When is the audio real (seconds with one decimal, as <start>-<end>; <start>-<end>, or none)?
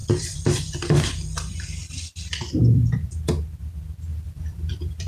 3.1-4.1